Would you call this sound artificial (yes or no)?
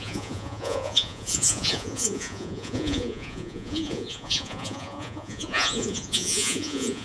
yes